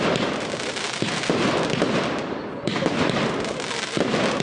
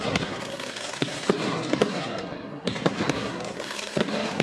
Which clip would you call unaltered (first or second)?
first